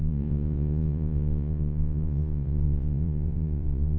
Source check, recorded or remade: remade